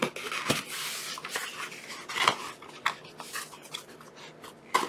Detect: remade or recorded recorded